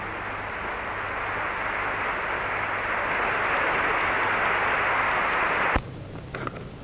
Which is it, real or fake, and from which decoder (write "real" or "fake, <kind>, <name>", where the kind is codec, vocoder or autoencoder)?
real